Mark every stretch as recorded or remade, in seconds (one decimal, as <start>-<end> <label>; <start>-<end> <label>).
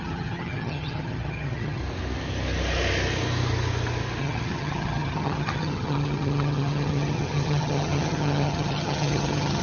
0.0-1.8 remade; 1.8-4.2 recorded; 4.2-9.6 remade